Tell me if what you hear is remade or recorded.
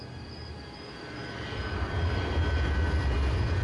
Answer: recorded